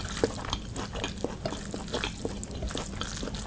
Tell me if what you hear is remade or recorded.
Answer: recorded